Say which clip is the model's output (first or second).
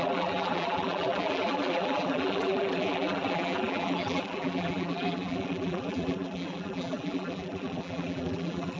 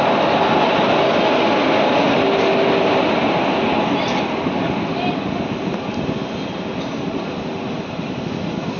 first